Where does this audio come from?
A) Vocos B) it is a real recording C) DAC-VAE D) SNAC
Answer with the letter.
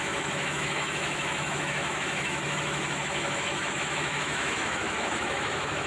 C